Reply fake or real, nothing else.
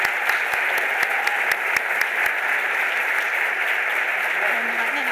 real